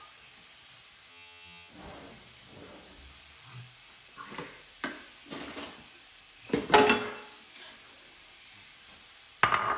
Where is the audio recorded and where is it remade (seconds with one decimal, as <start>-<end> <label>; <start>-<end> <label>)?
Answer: 0.0-1.1 recorded; 1.1-1.7 remade; 1.7-9.8 recorded